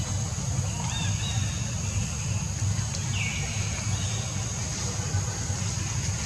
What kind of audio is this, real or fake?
real